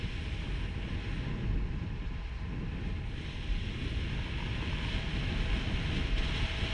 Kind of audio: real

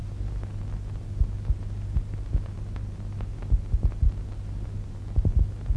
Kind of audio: real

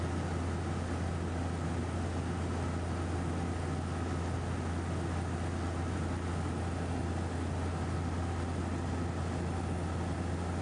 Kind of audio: real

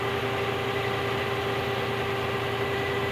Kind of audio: real